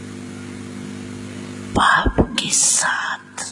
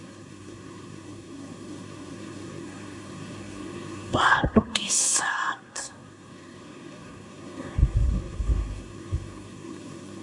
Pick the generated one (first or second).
second